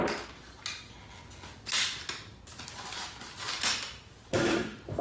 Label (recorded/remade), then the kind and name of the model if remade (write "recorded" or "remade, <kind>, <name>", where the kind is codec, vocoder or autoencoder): recorded